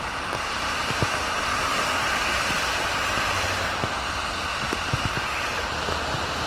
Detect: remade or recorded recorded